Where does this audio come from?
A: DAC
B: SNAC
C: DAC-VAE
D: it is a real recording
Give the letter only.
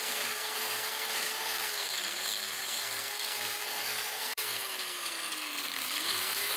B